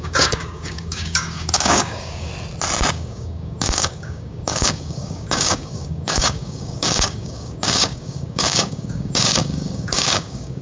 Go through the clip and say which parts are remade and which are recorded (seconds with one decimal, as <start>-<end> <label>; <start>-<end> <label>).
0.0-2.3 remade; 2.3-2.9 recorded; 2.9-10.6 remade